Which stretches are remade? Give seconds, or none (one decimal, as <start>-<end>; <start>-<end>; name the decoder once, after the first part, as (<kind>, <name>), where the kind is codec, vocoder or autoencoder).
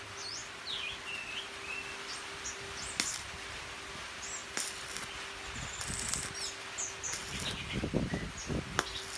none